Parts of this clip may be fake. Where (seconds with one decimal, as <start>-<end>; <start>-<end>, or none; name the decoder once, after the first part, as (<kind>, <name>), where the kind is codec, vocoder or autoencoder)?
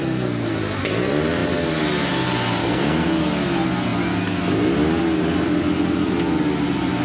0.0-0.5 (codec, SNAC); 2.6-3.2